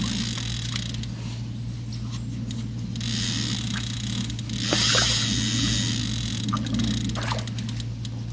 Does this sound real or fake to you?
real